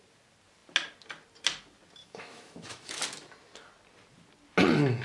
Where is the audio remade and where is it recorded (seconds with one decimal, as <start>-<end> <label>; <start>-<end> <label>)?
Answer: 0.0-2.0 recorded; 2.0-3.0 remade; 3.0-5.0 recorded